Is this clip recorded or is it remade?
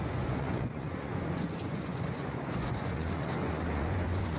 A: remade